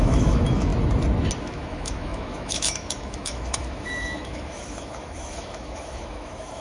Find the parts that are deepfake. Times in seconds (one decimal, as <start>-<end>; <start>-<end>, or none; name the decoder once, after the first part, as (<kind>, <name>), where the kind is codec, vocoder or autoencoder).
0.0-0.7 (autoencoder, DAC-VAE); 1.4-6.6